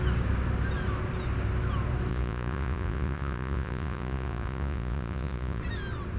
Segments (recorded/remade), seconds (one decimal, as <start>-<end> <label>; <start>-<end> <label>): 0.0-2.1 recorded; 2.1-5.6 remade; 5.6-6.2 recorded